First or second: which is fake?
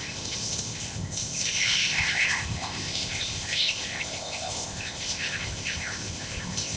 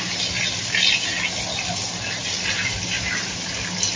first